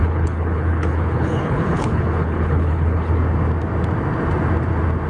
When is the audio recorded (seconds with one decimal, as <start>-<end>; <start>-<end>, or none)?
3.1-5.1